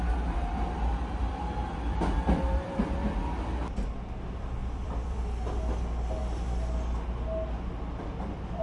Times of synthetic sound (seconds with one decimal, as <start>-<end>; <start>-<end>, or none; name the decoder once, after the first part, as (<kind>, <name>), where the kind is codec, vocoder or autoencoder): 1.6-2.8 (vocoder, BigVGAN v2); 4.6-5.2

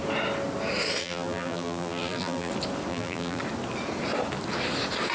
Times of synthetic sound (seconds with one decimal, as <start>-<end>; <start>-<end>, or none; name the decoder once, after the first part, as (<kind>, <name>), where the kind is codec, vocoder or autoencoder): 1.0-2.5 (vocoder, BigVGAN v2); 2.9-3.4

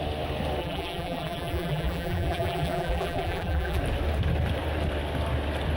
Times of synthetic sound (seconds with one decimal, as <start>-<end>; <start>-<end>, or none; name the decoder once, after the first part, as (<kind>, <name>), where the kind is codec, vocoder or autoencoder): 0.6-3.8 (vocoder, BigVGAN v2)